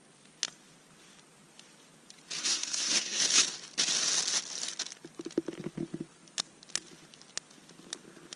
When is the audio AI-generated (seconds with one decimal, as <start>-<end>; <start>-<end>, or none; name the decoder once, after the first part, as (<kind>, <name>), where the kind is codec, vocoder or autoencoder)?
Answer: 2.4-3.2 (codec, SNAC)